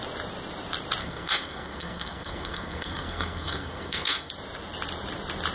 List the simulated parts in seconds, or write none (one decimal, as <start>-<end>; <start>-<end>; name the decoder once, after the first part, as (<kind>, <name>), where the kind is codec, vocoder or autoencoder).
1.0-4.3 (codec, SNAC)